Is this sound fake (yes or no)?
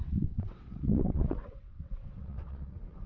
yes